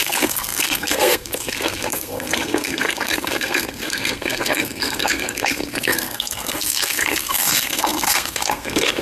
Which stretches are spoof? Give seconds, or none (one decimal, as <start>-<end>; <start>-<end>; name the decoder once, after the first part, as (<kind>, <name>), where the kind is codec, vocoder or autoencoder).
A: 0.0-9.0 (codec, SNAC)